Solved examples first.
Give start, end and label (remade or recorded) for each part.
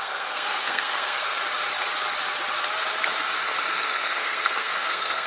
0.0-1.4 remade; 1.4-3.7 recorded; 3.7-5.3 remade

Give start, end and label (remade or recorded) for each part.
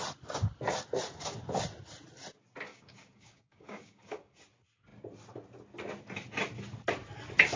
0.0-2.7 recorded; 2.7-4.4 remade; 4.4-7.6 recorded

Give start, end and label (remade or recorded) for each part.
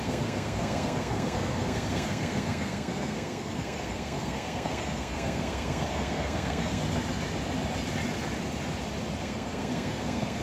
0.0-6.8 remade; 6.8-9.2 recorded; 9.2-10.4 remade